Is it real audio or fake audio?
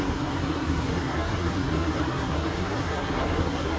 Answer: fake